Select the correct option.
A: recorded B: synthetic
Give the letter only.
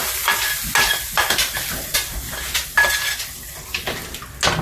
A